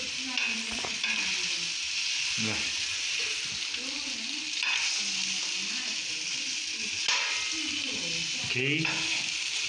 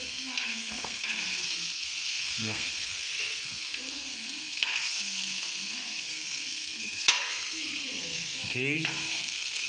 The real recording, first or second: first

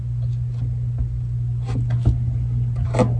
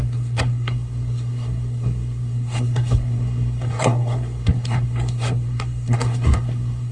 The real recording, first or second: first